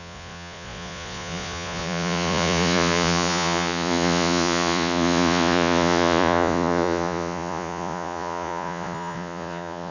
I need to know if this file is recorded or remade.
remade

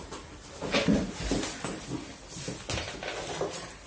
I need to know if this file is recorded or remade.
recorded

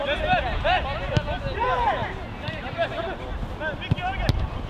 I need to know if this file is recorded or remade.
recorded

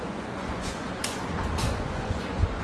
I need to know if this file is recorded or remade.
remade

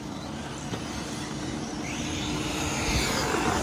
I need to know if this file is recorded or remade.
recorded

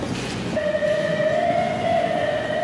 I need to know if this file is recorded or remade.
remade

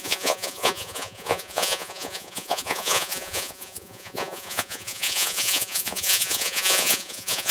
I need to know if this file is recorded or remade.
remade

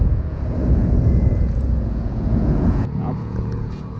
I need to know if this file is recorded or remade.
remade